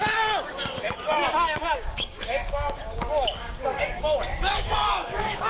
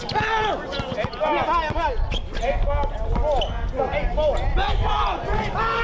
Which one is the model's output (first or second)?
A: first